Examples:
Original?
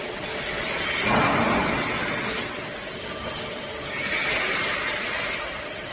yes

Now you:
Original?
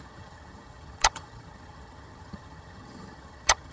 no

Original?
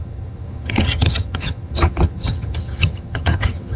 no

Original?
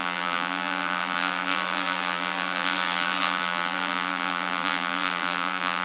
no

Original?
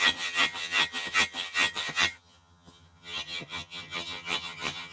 no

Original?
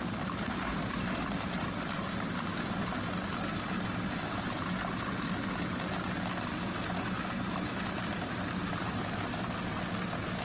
yes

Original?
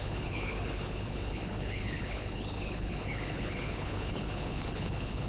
no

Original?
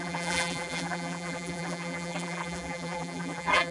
no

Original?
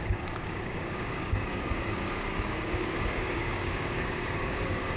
no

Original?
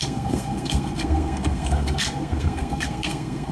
no